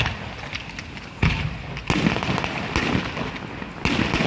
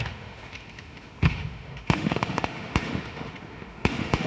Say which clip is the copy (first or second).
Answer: second